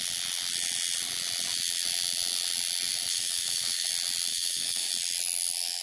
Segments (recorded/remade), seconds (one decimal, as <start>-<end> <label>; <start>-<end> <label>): 0.0-2.9 recorded; 2.9-3.9 remade; 3.9-4.3 recorded; 4.3-4.9 remade; 4.9-5.8 recorded